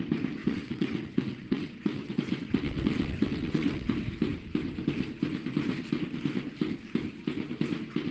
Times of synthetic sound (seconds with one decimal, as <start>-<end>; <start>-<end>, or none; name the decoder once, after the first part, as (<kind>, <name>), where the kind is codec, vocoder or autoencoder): 0.4-3.9 (vocoder, WaveNeXt)